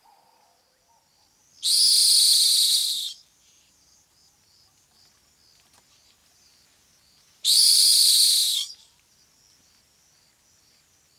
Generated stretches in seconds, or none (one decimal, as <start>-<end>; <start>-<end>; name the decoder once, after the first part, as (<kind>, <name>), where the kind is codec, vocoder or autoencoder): 2.8-5.0 (vocoder, BigVGAN v2); 6.2-8.1; 8.5-9.2